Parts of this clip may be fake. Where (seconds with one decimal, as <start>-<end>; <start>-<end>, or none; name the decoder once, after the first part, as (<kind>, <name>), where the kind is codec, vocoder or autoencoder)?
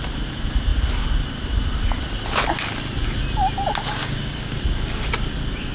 4.0-4.6 (codec, DAC)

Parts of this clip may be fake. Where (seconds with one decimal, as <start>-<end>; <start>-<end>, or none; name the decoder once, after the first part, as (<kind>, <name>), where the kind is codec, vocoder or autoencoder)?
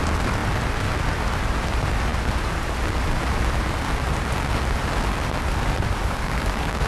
6.0-6.9 (codec, DAC)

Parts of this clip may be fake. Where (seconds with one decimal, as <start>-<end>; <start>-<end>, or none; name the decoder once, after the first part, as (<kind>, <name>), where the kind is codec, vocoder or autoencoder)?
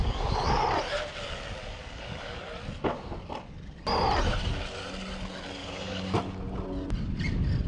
0.0-0.6 (codec, DAC); 1.6-2.4; 5.6-6.2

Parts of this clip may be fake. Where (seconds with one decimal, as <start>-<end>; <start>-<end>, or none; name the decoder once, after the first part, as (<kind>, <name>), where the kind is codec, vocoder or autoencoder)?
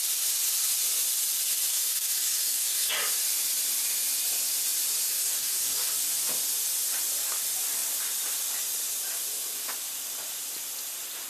1.7-2.9 (codec, DAC); 5.1-5.9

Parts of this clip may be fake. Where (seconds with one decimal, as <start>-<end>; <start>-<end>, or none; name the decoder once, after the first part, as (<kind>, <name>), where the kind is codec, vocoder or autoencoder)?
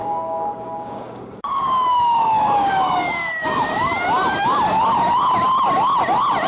0.0-3.9 (codec, DAC)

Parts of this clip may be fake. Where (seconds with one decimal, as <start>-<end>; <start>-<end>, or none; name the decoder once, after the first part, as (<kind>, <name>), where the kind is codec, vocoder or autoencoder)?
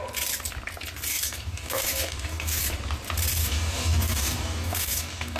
1.1-2.6 (codec, DAC); 3.4-5.4